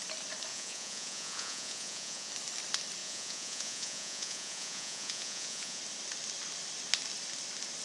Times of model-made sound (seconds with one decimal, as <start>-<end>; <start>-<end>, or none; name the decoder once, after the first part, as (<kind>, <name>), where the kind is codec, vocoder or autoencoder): 0.5-2.3 (vocoder, Vocos); 3.0-5.8